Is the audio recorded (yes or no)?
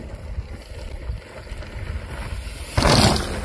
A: yes